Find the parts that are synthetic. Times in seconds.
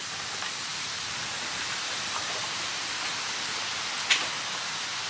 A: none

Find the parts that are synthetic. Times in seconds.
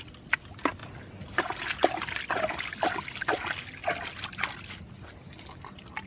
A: none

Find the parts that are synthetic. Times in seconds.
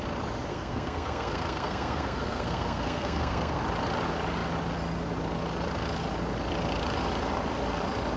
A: 0.5-3.6 (codec, SNAC)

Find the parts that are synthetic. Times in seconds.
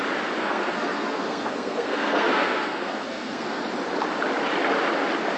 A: 0.4-3.6 (codec, SNAC)